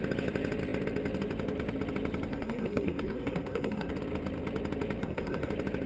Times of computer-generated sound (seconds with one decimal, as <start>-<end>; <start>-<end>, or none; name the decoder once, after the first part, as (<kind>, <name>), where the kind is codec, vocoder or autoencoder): 2.3-3.9 (codec, SNAC); 5.0-5.5